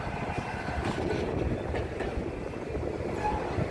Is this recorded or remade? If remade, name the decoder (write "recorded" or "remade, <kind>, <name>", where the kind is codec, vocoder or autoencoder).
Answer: recorded